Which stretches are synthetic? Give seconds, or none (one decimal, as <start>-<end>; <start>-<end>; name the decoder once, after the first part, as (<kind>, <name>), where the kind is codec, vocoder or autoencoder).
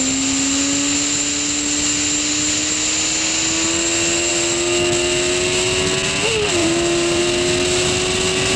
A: 6.6-7.2 (vocoder, BigVGAN v2)